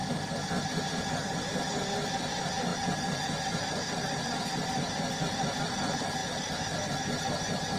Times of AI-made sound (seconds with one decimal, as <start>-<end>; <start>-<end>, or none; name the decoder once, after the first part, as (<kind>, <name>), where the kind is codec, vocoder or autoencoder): 2.7-5.6 (vocoder, BigVGAN v2); 6.2-6.8